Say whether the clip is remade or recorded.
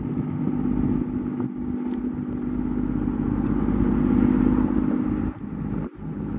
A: recorded